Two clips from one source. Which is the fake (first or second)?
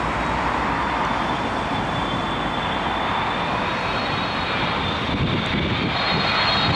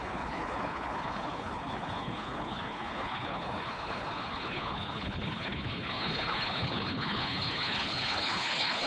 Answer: second